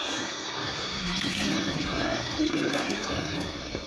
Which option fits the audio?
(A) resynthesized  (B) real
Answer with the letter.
A